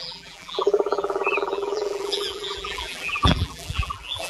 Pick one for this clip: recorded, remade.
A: remade